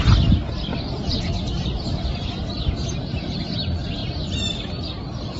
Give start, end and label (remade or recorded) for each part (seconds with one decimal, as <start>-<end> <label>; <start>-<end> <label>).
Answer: 0.0-0.7 recorded; 0.7-2.3 remade; 2.3-4.0 recorded; 4.0-4.8 remade; 4.8-5.4 recorded